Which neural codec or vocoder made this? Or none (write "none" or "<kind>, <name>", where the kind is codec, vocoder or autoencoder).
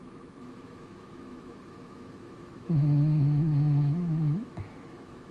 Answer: autoencoder, DAC-VAE